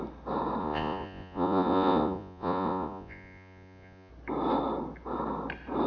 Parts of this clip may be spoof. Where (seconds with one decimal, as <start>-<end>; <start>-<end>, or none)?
0.6-4.1